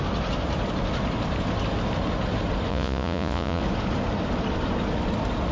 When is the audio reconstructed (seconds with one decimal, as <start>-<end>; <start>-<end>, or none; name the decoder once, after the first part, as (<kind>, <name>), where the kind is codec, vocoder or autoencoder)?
2.7-3.6 (vocoder, Vocos)